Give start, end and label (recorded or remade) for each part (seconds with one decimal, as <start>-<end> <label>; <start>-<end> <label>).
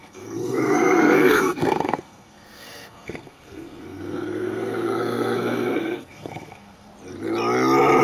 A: 0.0-6.9 remade; 6.9-8.0 recorded